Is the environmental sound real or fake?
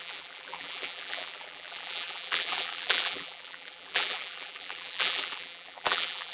fake